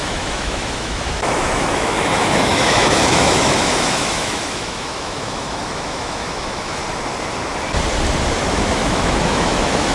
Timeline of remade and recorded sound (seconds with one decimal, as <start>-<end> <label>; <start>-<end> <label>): 0.0-6.8 remade; 6.8-8.5 recorded; 8.5-9.9 remade